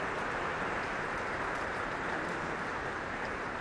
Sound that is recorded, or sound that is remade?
remade